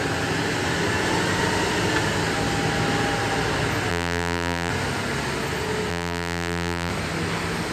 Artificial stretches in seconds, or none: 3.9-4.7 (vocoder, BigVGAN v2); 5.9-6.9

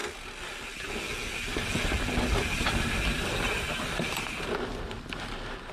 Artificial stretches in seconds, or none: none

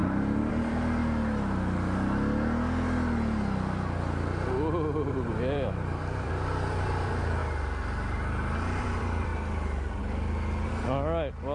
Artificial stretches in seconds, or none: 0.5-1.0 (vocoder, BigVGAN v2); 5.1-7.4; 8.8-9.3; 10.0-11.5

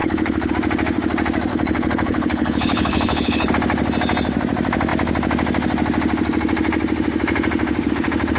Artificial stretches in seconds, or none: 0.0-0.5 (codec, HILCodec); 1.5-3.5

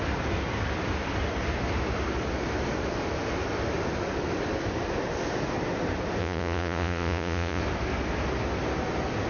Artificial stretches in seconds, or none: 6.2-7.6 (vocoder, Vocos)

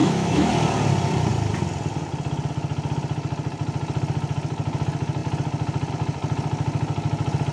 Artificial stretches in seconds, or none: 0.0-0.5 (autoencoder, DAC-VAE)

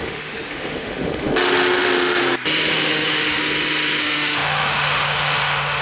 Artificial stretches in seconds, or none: 0.0-2.2 (autoencoder, DAC-VAE); 2.7-3.4; 4.0-5.8

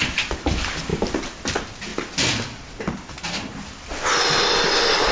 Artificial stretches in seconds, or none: none